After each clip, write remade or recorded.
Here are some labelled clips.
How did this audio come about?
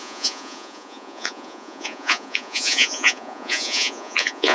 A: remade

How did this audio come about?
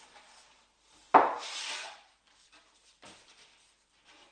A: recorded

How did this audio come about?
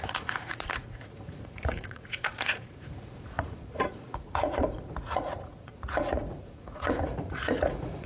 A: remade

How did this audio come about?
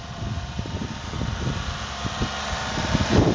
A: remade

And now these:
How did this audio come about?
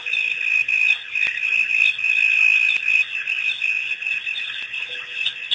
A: recorded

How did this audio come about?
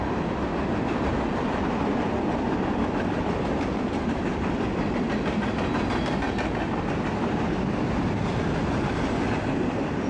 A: recorded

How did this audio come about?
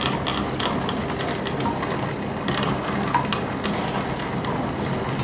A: recorded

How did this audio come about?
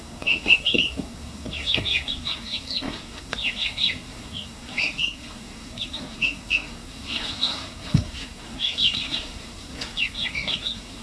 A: remade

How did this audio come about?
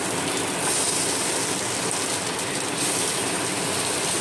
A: recorded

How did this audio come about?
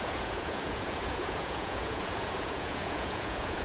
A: remade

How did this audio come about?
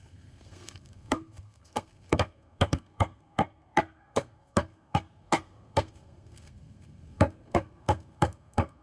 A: remade